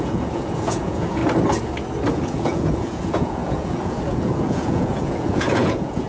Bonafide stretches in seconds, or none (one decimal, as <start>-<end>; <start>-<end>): 1.2-2.1